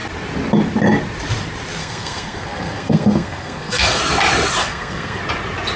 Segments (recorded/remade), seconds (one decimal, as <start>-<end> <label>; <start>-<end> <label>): 0.0-1.8 recorded; 1.8-4.0 remade; 4.0-4.6 recorded; 4.6-5.2 remade; 5.2-5.8 recorded